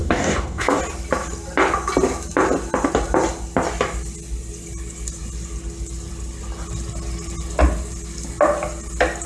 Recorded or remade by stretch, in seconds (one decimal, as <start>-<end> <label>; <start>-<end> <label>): 0.0-0.8 remade; 0.8-9.3 recorded